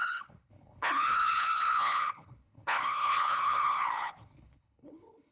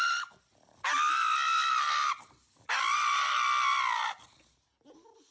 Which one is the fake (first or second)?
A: first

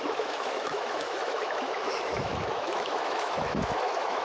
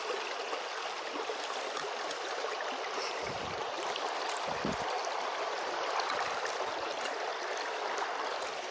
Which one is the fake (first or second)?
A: first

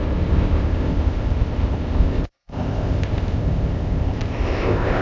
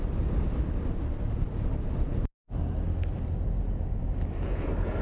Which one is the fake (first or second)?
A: first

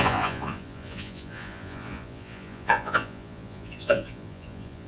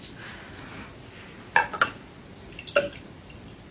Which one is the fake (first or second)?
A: first